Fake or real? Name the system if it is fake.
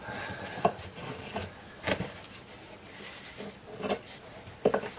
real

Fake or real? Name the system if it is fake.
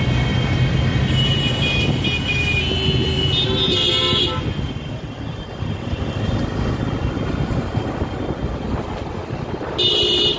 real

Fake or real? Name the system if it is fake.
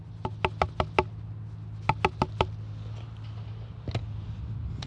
real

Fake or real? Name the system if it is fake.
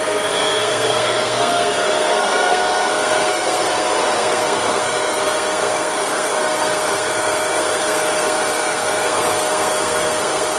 fake, codec, SNAC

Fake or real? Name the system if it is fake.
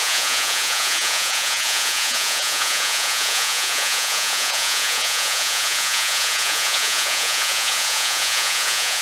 fake, vocoder, Vocos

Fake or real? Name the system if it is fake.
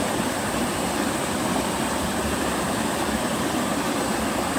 real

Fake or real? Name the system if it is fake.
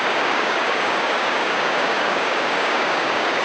fake, codec, DAC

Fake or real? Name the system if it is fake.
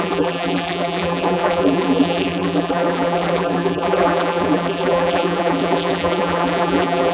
fake, vocoder, BigVGAN v2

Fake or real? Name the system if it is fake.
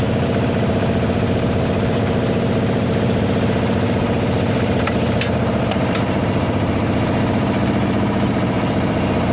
fake, vocoder, BigVGAN v2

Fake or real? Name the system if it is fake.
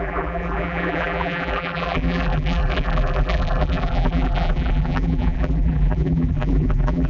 fake, vocoder, BigVGAN v2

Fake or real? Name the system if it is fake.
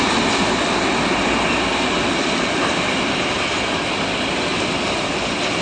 real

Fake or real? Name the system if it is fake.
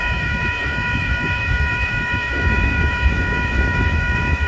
fake, autoencoder, DAC-VAE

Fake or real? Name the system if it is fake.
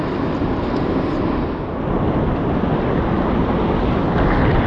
real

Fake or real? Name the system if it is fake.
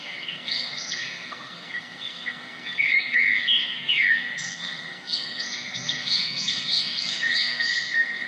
fake, codec, SNAC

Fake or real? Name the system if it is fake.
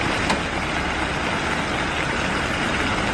real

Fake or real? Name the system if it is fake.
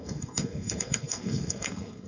fake, codec, SNAC